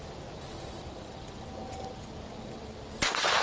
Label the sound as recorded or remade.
recorded